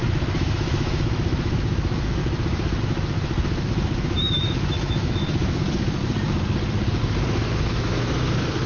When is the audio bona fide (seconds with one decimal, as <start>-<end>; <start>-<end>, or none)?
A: 6.0-7.0